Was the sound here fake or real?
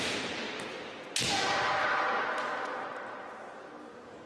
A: real